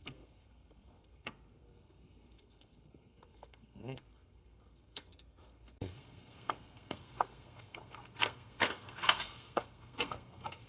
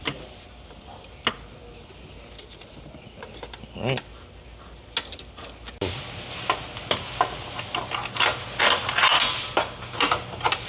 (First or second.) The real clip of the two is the second